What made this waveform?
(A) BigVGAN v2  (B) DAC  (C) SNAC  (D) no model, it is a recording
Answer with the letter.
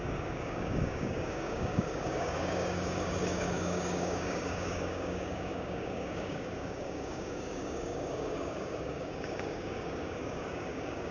B